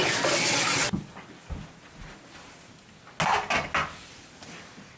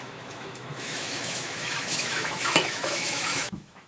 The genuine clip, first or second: first